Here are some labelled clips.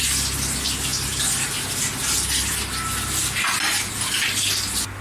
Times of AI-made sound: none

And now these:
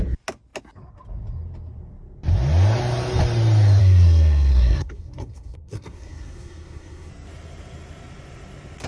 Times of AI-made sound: 3.8-7.1

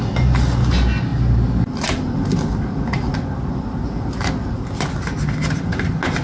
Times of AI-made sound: none

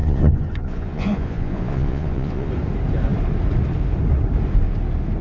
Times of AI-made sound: 0.0-2.5

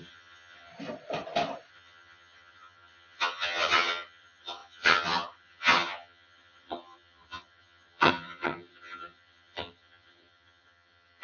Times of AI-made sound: 0.0-0.7; 1.7-11.2